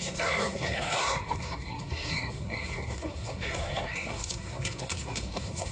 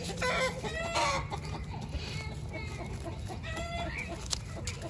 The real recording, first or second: second